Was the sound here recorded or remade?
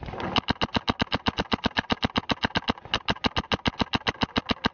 recorded